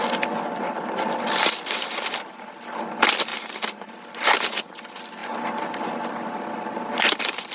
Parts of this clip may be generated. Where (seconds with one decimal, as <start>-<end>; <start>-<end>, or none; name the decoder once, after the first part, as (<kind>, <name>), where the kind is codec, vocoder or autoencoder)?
3.3-3.9 (vocoder, BigVGAN v2)